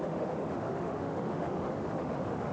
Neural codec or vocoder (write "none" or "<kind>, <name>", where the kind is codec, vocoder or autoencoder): autoencoder, DAC-VAE